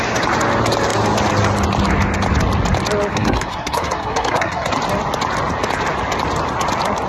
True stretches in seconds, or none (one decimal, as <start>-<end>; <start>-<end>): 0.0-3.1; 4.7-7.1